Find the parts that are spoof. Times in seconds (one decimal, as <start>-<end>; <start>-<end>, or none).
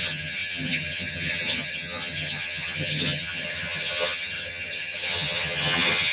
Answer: 0.0-6.1